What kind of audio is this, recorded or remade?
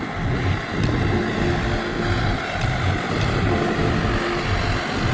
recorded